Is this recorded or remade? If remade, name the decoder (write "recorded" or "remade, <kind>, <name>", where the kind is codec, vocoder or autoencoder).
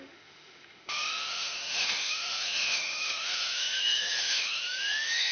remade, autoencoder, DAC-VAE